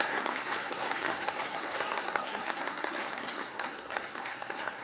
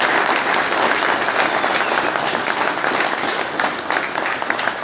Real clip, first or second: second